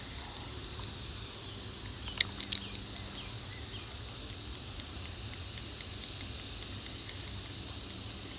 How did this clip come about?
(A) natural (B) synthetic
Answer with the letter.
A